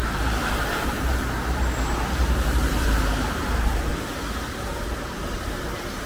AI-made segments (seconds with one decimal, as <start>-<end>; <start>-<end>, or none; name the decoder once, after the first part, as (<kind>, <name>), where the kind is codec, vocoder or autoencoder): 0.0-6.1 (vocoder, BigVGAN v2)